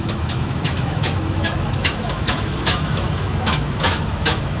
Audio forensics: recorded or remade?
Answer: remade